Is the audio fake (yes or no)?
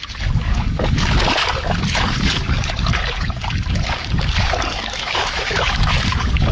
yes